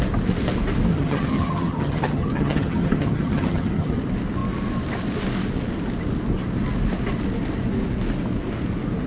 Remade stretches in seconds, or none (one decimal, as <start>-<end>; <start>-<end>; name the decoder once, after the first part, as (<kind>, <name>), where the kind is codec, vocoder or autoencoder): 0.9-4.0 (vocoder, HiFi-GAN)